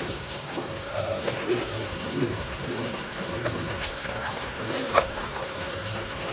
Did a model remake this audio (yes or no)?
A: yes